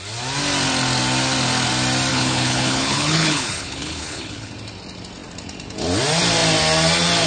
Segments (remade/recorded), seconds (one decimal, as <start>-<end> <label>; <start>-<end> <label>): 0.0-2.1 recorded; 2.1-4.5 remade; 4.5-7.3 recorded